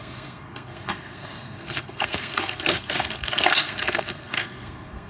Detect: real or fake fake